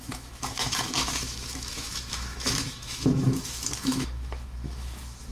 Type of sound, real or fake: fake